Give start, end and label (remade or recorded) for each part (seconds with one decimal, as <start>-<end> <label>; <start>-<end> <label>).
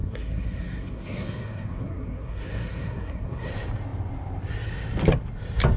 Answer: 0.0-3.5 remade; 3.5-5.8 recorded